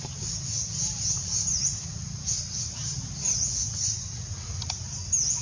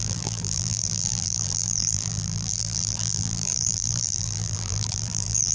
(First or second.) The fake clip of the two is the second